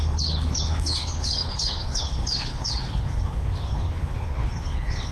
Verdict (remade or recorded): remade